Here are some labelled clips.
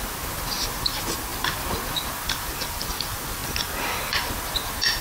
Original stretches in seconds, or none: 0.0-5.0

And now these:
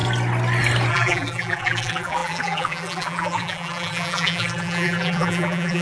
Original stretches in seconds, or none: 0.0-0.9

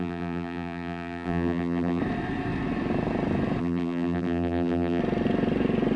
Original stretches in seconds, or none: 2.0-3.6; 5.0-6.0

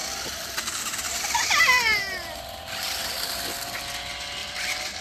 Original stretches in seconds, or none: 3.0-4.4

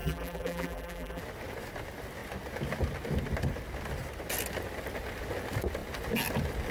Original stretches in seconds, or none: 1.2-6.7